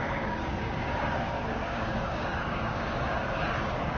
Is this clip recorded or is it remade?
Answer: remade